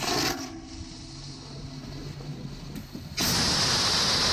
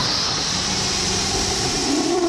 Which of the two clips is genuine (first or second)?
first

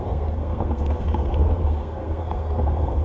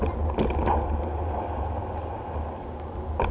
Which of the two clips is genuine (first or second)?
second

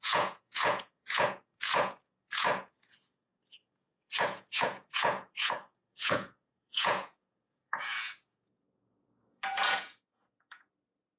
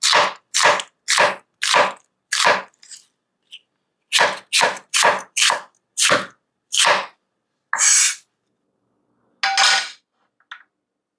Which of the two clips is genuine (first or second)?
second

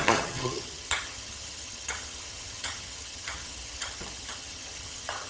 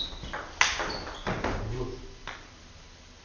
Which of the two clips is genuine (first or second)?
second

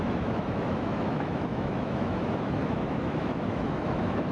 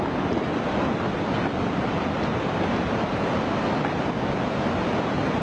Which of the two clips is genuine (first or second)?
second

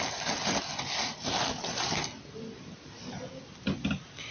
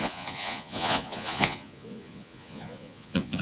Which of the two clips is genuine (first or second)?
first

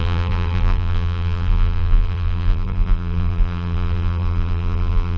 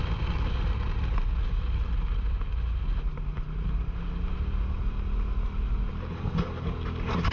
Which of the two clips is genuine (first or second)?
second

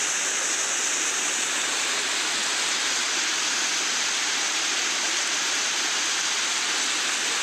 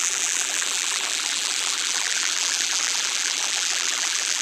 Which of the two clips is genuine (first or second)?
first